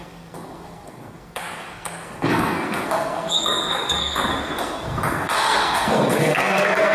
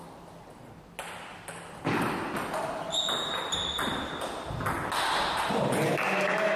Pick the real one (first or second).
second